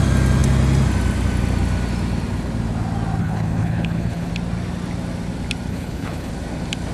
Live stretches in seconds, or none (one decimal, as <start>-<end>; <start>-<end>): 0.0-3.2; 4.3-5.7; 6.3-6.9